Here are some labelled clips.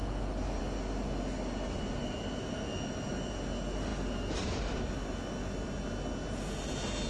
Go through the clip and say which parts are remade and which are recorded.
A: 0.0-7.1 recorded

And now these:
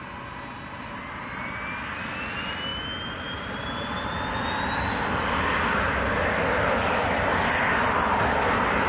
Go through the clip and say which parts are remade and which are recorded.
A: 0.0-8.9 recorded